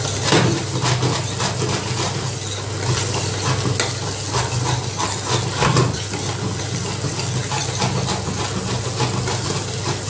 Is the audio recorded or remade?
recorded